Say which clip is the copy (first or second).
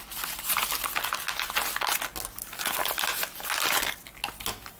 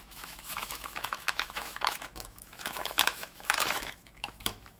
second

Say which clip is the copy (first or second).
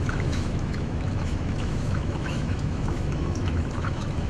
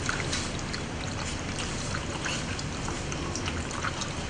first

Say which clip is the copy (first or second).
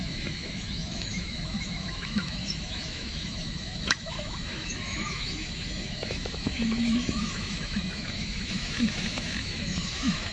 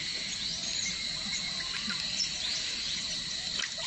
first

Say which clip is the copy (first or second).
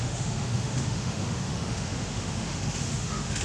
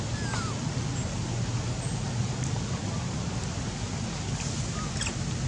first